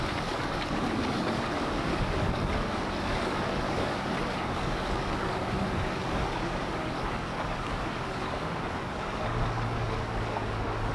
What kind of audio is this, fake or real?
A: fake